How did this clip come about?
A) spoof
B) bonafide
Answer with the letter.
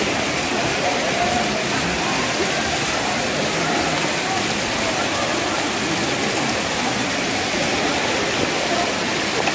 B